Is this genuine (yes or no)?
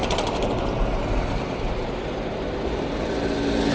yes